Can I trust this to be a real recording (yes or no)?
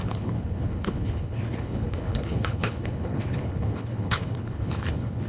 no